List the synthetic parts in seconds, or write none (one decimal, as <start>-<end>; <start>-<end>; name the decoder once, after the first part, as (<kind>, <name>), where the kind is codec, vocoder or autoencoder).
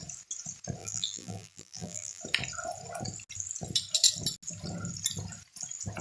0.8-2.2 (vocoder, BigVGAN v2)